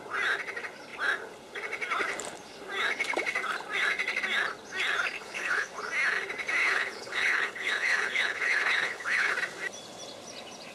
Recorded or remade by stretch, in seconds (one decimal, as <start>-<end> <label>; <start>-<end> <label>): 0.0-5.2 recorded; 5.2-5.7 remade; 5.7-6.6 recorded; 6.6-9.3 remade; 9.3-10.7 recorded